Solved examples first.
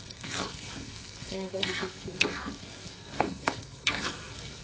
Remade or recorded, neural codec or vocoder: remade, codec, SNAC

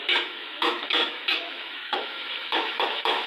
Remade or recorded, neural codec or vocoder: remade, autoencoder, DAC-VAE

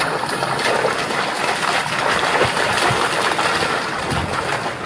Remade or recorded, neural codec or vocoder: recorded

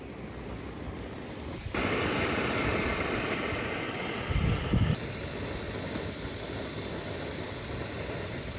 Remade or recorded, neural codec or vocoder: recorded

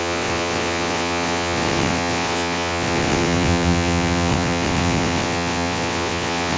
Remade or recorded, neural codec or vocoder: remade, vocoder, WaveNeXt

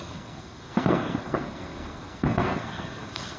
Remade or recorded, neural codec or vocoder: remade, codec, SNAC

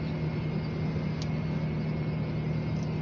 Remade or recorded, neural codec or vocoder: recorded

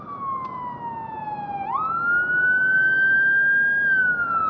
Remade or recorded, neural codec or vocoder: recorded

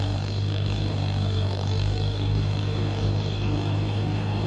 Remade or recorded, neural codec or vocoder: remade, codec, DAC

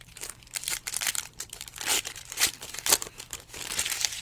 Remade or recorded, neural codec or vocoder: remade, vocoder, BigVGAN v2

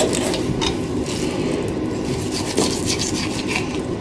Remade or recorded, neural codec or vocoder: recorded